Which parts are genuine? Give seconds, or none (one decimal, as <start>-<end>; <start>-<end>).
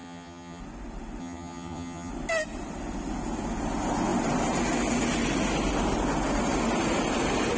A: 0.6-1.2; 2.1-7.6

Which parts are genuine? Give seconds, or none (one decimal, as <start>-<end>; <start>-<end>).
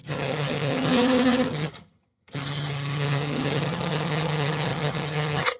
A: none